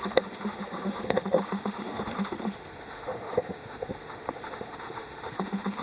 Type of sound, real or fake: fake